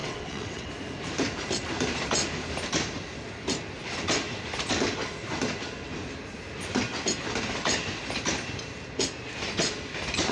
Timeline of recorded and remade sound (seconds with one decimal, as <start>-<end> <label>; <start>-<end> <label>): 0.0-0.7 remade; 0.7-10.3 recorded